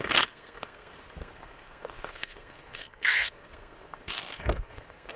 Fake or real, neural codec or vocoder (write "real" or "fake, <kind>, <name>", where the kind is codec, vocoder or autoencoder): fake, codec, SNAC